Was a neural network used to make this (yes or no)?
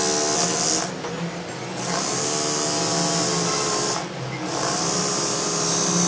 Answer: no